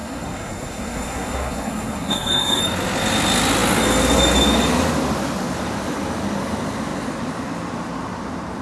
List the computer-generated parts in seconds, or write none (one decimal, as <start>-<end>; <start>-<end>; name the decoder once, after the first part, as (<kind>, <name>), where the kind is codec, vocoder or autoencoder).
0.0-2.6 (codec, SNAC)